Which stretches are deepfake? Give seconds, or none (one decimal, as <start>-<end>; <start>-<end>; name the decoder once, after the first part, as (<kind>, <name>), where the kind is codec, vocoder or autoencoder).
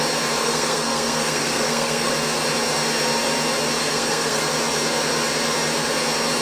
0.4-2.1 (codec, SNAC); 3.8-4.4